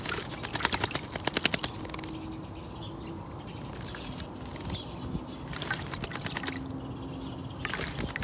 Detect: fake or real real